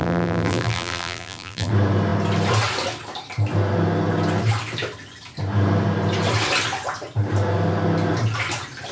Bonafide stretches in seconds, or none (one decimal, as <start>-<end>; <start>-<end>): 1.7-8.9